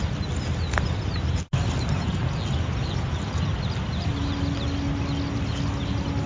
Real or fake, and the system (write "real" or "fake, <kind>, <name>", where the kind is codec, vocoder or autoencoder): real